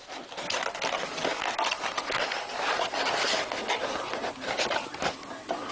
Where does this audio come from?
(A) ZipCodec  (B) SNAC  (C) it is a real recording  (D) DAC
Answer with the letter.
C